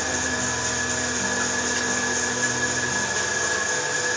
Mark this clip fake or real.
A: real